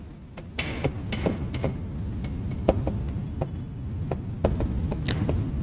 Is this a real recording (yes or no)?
yes